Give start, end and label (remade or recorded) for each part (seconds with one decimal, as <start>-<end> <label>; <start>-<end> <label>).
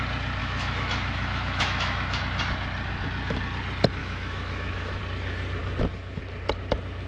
0.0-0.4 recorded; 0.4-2.2 remade; 2.2-4.0 recorded; 4.0-5.0 remade; 5.0-7.1 recorded